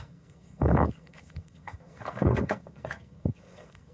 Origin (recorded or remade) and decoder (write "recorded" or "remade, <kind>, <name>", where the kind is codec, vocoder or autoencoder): remade, codec, SNAC